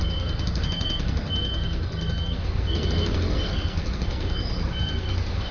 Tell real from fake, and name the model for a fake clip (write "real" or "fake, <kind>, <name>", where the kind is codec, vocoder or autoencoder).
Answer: fake, codec, SNAC